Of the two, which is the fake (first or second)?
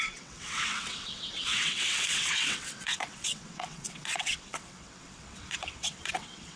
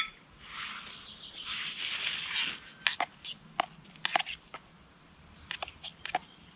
first